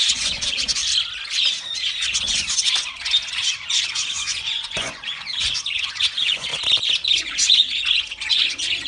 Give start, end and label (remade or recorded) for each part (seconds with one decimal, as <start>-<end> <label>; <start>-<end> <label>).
0.0-0.8 remade; 0.8-1.5 recorded; 1.5-6.5 remade; 6.5-7.2 recorded; 7.2-8.9 remade